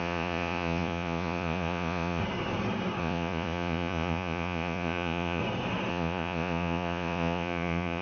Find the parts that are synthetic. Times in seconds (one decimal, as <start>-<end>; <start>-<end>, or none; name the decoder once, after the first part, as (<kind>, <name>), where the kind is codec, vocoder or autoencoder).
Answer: 0.0-2.2 (vocoder, Vocos); 3.0-5.4; 5.9-8.0